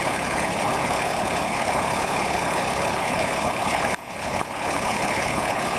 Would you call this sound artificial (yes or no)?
yes